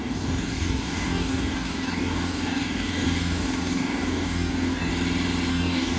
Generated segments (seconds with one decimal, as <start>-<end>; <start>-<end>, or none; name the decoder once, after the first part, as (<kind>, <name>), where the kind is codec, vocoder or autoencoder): 0.0-4.9 (codec, DAC); 5.5-6.0